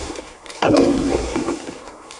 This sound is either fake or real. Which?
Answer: fake